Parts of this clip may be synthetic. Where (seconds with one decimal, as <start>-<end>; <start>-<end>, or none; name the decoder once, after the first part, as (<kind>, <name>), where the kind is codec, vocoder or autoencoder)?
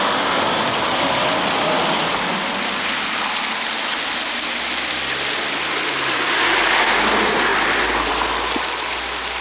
7.5-8.1 (vocoder, BigVGAN v2)